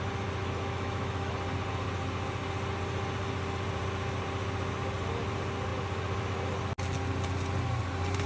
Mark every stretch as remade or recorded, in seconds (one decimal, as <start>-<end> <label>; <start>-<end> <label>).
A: 0.0-0.4 recorded; 0.4-1.3 remade; 1.3-8.3 recorded